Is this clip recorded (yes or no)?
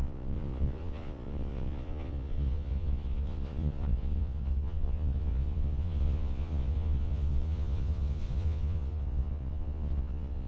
no